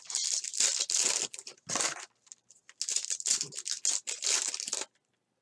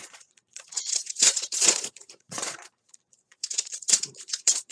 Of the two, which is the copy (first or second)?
second